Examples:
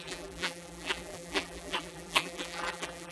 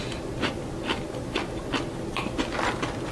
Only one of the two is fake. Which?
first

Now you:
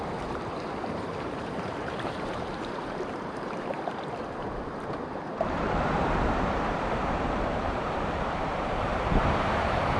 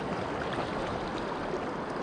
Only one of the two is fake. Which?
first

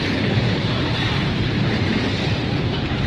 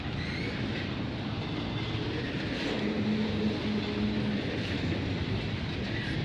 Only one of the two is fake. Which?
first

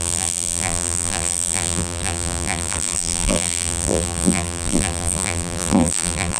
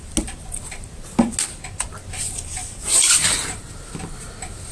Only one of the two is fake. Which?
first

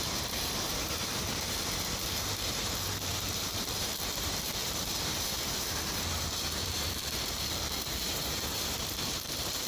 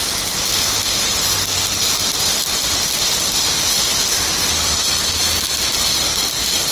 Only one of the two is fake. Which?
first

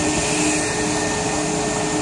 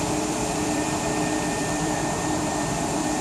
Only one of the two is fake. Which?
second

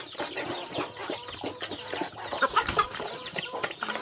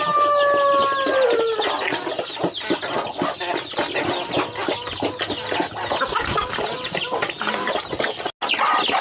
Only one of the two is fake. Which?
first